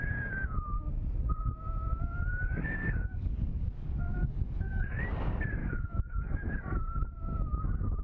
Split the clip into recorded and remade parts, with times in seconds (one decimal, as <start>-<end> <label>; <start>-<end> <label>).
0.0-2.8 recorded; 2.8-5.0 remade; 5.0-5.6 recorded; 5.6-6.6 remade; 6.6-8.0 recorded